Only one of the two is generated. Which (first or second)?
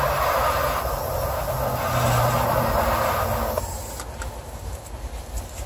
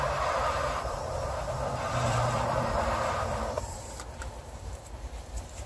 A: second